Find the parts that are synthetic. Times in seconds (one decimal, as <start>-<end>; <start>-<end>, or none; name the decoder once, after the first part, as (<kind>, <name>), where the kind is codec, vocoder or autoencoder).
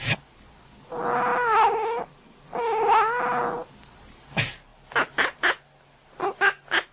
none